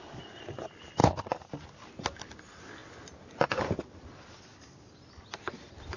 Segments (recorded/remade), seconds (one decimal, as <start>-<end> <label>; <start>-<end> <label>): 0.0-6.0 recorded